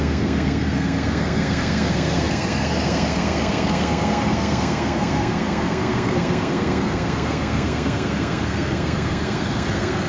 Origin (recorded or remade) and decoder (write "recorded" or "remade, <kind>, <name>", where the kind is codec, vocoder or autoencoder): remade, codec, SNAC